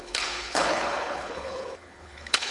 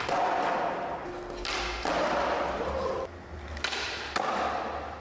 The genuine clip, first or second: second